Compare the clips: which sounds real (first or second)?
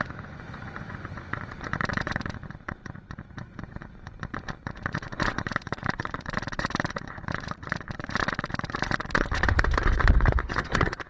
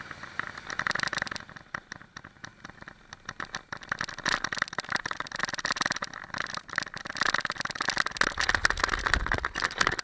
second